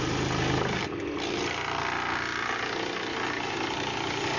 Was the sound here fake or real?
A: real